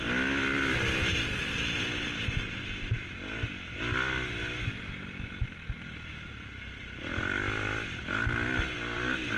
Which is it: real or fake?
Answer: real